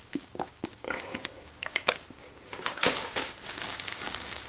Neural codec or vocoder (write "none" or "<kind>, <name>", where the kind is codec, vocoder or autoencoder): codec, DAC